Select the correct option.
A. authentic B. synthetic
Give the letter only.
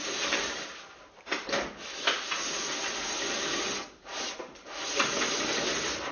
A